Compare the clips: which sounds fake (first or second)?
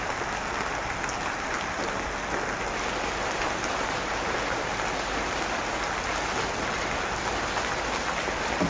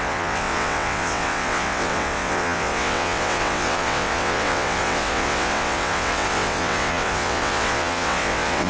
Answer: second